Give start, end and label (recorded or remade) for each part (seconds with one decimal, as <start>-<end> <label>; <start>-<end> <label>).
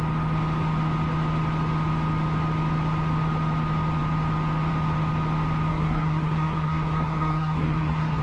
0.0-5.7 recorded; 5.7-8.2 remade